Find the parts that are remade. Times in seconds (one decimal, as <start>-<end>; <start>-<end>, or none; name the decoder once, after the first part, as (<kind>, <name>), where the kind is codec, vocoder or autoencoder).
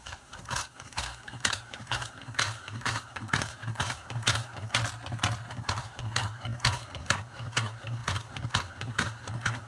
0.0-4.8 (codec, SNAC); 5.5-9.7